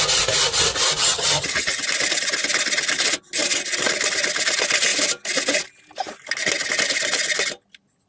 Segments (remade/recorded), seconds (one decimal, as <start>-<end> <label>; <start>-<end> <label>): 0.0-1.0 recorded; 1.0-1.8 remade; 1.8-8.1 recorded